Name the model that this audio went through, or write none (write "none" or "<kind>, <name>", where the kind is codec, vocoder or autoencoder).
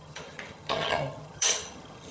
vocoder, HiFi-GAN